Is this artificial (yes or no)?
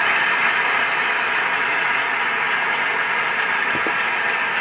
no